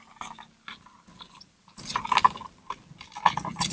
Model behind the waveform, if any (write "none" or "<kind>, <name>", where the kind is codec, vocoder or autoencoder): none